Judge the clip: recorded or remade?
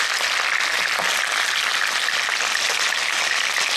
recorded